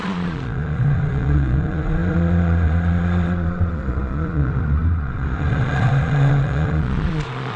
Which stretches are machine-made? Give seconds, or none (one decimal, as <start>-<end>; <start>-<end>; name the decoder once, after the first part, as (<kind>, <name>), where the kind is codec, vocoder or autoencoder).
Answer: 0.0-7.6 (vocoder, Vocos)